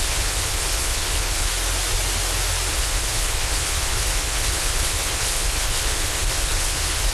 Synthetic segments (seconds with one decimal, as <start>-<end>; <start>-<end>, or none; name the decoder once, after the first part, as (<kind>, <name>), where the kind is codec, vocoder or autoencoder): 0.0-1.5 (codec, HILCodec); 2.7-7.1